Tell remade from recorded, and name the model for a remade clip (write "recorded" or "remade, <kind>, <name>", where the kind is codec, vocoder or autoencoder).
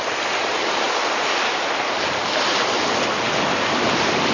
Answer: recorded